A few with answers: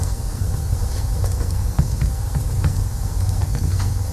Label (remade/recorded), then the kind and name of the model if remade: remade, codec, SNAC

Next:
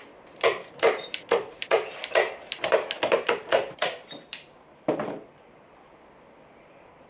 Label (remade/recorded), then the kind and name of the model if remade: remade, vocoder, BigVGAN v2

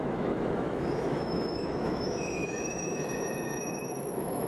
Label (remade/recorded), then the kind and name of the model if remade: remade, autoencoder, DAC-VAE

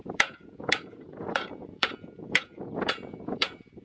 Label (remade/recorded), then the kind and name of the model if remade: remade, vocoder, Vocos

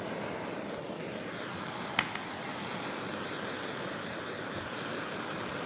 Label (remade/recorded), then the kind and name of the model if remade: recorded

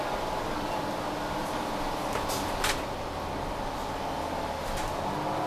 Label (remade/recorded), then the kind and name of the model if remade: recorded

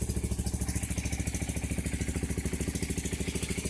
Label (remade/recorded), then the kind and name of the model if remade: recorded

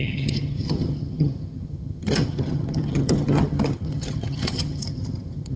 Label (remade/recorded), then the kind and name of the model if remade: remade, vocoder, HiFi-GAN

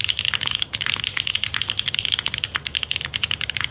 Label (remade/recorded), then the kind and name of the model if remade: recorded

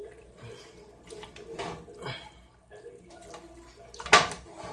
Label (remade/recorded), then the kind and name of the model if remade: recorded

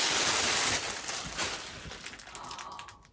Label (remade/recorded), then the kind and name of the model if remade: recorded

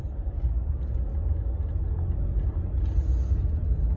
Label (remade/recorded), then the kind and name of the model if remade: recorded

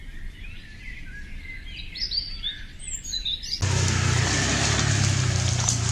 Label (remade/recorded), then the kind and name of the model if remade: recorded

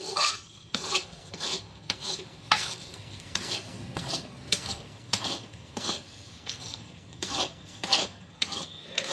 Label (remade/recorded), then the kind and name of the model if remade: remade, codec, SNAC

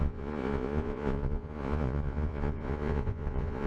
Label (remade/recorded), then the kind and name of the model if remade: remade, vocoder, Vocos